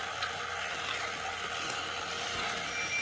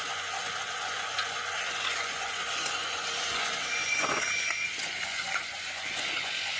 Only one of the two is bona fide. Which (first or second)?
first